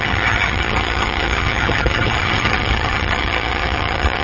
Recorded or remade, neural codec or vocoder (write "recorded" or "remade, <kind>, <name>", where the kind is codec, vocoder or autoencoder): remade, vocoder, HiFi-GAN